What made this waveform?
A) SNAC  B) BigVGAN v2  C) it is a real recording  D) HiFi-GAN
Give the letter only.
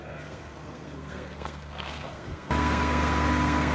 A